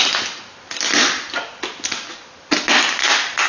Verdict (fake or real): real